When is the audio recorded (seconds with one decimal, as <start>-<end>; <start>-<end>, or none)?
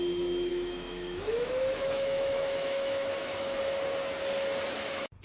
0.0-0.5; 3.6-5.2